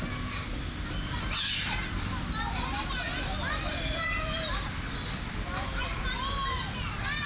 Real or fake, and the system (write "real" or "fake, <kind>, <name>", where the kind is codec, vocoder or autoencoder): real